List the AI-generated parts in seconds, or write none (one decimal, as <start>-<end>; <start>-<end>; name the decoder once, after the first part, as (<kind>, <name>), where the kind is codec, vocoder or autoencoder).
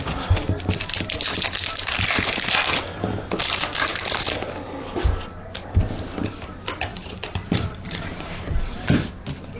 6.9-9.1 (vocoder, BigVGAN v2)